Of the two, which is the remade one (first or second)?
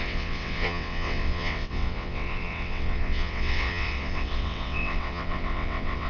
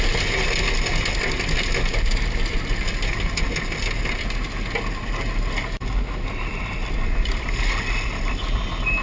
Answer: first